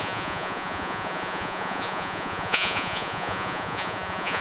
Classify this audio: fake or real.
fake